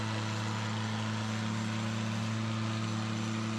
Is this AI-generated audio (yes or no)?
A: no